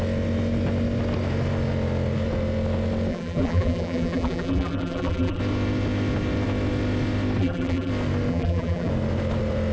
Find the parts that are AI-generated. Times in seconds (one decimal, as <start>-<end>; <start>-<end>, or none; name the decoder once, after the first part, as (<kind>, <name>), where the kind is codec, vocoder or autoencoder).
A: 3.1-5.4 (vocoder, BigVGAN v2); 7.4-7.9; 8.3-8.9

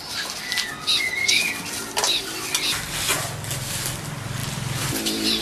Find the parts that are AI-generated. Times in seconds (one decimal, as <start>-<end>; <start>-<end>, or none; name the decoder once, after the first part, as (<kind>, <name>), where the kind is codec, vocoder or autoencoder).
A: 4.4-5.4 (vocoder, BigVGAN v2)

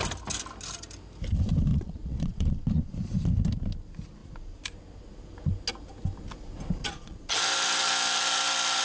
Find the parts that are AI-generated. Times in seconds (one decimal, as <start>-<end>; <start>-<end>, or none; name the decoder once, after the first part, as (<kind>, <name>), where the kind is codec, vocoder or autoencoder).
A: 1.7-2.9 (vocoder, Vocos); 6.8-7.3

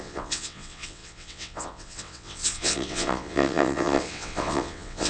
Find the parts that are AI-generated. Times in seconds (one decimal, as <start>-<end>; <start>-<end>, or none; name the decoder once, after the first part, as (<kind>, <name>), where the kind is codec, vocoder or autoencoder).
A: 0.0-5.1 (vocoder, WaveNeXt)

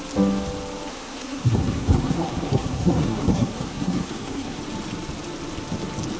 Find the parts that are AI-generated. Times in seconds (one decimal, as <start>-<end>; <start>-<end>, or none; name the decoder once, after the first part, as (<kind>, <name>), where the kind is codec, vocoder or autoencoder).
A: 0.9-4.6 (codec, SNAC)

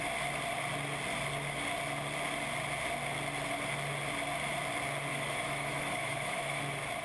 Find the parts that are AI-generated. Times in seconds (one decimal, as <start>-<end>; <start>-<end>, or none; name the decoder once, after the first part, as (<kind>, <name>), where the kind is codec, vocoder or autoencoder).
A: 5.1-6.6 (autoencoder, DAC-VAE)

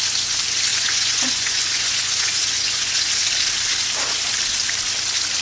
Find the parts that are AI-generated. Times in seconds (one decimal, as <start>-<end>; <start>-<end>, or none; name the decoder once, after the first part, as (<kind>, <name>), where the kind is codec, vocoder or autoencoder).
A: 0.7-3.1 (vocoder, Vocos)

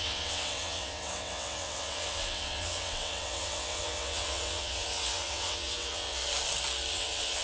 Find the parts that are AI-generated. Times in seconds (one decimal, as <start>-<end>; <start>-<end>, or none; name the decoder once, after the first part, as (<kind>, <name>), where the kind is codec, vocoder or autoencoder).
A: 0.0-6.2 (vocoder, WaveNeXt); 6.9-7.4